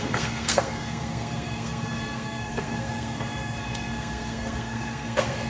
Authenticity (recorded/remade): remade